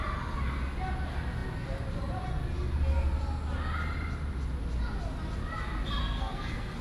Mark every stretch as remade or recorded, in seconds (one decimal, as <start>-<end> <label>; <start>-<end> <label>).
0.0-6.0 recorded; 6.0-6.8 remade